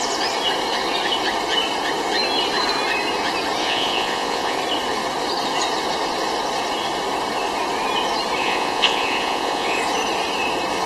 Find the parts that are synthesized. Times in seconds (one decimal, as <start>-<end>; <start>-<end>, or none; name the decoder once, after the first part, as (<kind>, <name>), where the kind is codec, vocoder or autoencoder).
3.6-4.6 (vocoder, Vocos); 8.4-9.8